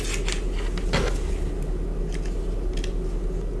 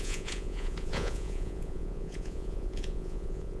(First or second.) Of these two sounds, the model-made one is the second